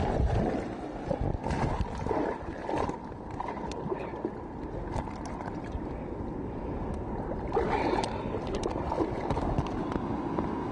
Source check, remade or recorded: recorded